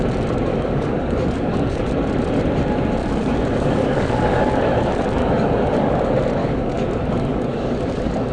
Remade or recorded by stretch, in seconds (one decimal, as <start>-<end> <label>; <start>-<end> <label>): 0.0-0.5 recorded; 0.5-1.9 remade; 1.9-3.0 recorded; 3.0-6.0 remade; 6.0-6.4 recorded; 6.4-8.3 remade

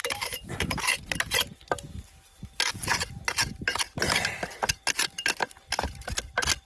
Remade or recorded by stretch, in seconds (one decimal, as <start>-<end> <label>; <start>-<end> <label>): 0.0-1.1 remade; 1.1-6.6 recorded

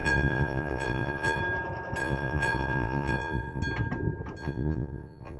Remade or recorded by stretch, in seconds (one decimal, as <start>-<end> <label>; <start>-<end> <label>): 0.0-1.4 remade; 1.4-2.0 recorded; 2.0-3.6 remade; 3.6-4.4 recorded; 4.4-5.4 remade

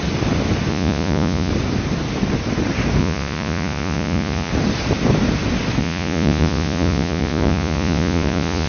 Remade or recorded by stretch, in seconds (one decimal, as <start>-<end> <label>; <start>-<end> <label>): 0.0-0.7 recorded; 0.7-1.5 remade; 1.5-3.0 recorded; 3.0-4.5 remade; 4.5-5.8 recorded; 5.8-8.7 remade

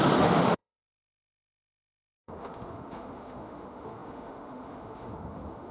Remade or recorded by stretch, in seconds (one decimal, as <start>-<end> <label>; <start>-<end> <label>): 0.0-5.7 remade

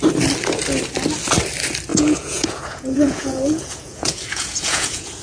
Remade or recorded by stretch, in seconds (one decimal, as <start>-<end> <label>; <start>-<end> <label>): 0.0-1.9 recorded; 1.9-5.2 remade